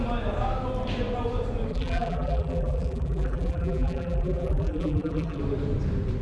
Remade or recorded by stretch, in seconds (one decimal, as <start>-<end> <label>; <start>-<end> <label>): 0.0-1.7 recorded; 1.7-5.4 remade; 5.4-6.2 recorded